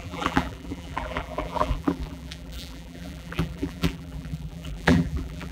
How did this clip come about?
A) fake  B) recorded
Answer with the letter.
A